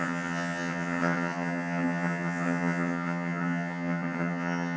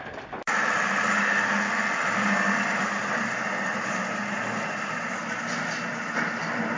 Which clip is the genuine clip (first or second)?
second